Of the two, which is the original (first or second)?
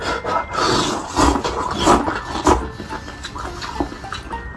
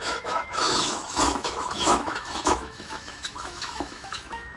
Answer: first